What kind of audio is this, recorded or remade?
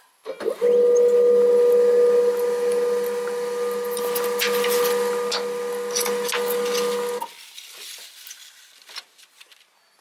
recorded